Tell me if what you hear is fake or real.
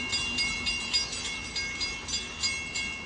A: real